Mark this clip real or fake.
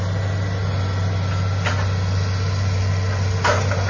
real